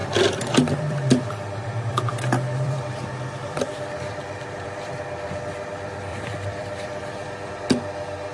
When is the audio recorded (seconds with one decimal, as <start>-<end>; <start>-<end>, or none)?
4.9-6.1; 7.5-8.3